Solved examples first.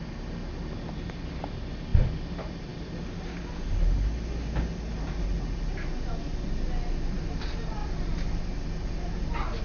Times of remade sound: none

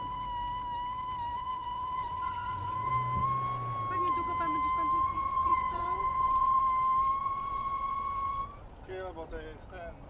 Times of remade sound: 1.3-2.9 (vocoder, Vocos); 5.0-6.6; 7.2-8.7

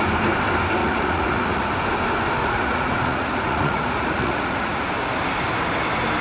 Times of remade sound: 0.8-1.7 (vocoder, Vocos); 2.4-4.9

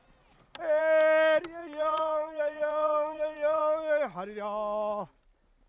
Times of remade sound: 1.6-3.6 (vocoder, Vocos)